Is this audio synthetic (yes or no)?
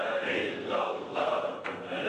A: yes